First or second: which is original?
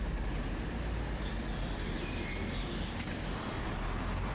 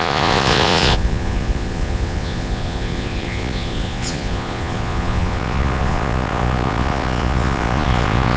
first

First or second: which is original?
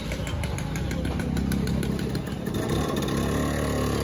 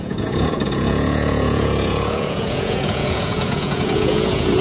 first